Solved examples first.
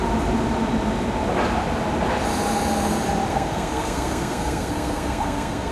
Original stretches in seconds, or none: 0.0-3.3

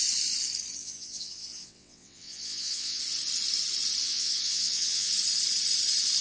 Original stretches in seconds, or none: 0.0-0.8; 3.0-4.0; 5.1-6.2

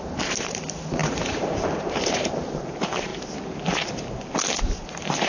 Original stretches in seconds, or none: 3.1-4.6

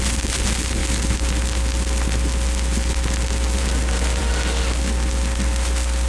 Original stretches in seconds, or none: 0.0-6.1